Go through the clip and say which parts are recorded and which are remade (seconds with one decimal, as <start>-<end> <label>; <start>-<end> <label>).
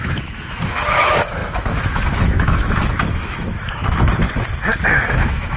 0.0-3.8 remade; 3.8-4.9 recorded; 4.9-5.6 remade